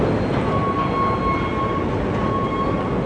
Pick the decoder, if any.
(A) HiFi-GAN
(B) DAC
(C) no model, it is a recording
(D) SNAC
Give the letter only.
C